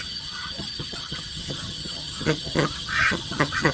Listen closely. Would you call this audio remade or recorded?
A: remade